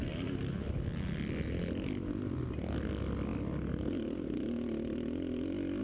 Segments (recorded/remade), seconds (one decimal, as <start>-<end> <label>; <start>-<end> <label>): 0.0-5.8 recorded